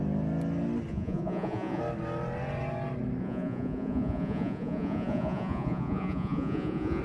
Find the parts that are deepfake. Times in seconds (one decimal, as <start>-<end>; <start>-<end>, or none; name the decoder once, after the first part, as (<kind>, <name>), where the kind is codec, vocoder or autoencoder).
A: 0.9-1.8 (vocoder, Vocos); 3.2-7.0